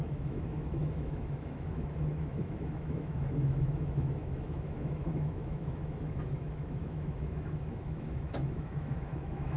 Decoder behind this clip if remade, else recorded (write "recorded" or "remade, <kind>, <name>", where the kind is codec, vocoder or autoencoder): remade, autoencoder, DAC-VAE